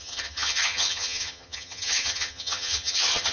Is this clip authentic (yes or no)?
no